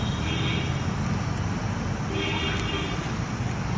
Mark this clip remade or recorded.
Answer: recorded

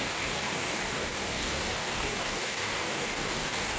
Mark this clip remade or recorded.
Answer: remade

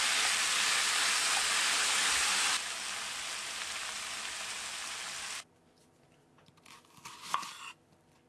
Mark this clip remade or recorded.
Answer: recorded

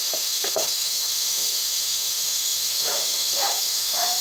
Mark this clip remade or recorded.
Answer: remade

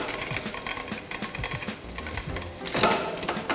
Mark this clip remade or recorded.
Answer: recorded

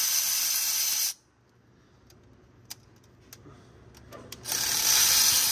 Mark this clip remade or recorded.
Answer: recorded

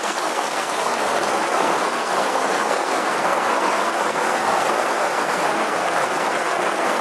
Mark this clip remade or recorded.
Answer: remade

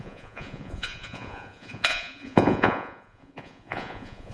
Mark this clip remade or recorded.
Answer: remade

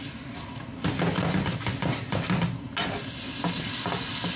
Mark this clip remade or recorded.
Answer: recorded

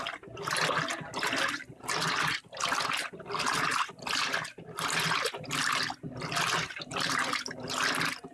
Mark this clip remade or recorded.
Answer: recorded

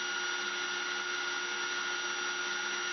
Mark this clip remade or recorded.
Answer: recorded